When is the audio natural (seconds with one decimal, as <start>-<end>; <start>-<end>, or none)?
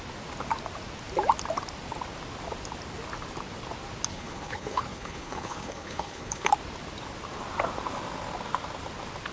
0.0-4.1; 6.5-9.3